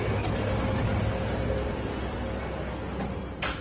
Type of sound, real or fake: real